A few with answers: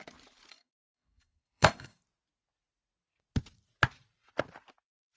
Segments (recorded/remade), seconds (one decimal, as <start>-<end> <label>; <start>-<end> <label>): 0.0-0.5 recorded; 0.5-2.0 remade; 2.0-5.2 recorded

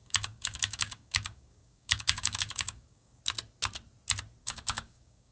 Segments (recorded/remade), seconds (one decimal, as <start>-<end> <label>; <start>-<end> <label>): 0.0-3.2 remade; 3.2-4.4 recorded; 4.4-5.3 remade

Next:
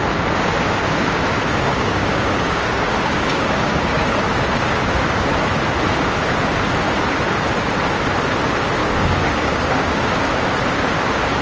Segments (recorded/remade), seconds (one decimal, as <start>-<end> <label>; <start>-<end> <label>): 0.0-1.5 recorded; 1.5-5.3 remade; 5.3-8.8 recorded; 8.8-10.0 remade; 10.0-11.4 recorded